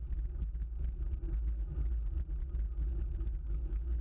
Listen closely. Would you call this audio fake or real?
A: real